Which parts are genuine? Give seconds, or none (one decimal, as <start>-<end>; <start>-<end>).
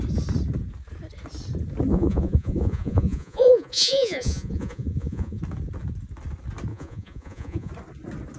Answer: 0.0-1.9; 5.4-6.7; 7.7-8.4